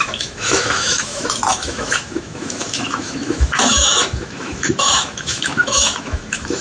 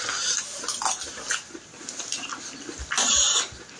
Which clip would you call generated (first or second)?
first